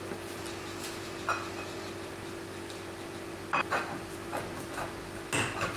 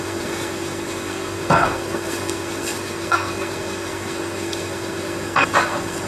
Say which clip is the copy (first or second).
second